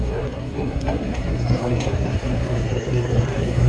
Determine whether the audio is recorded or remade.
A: remade